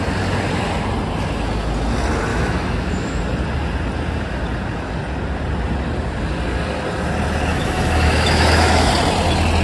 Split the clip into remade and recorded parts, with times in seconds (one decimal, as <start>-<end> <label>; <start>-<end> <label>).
0.0-2.3 recorded; 2.3-3.2 remade; 3.2-7.5 recorded; 7.5-8.9 remade; 8.9-9.6 recorded